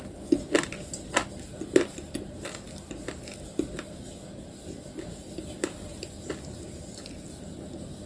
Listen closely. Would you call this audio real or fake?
real